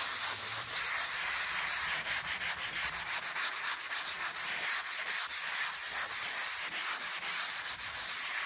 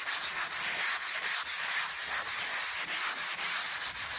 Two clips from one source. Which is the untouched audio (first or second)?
second